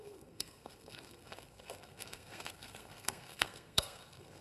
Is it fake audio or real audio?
fake